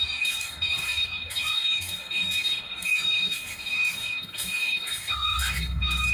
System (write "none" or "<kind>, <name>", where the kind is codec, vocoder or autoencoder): codec, DAC